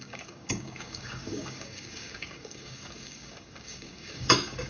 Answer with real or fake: fake